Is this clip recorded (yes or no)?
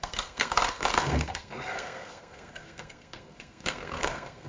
no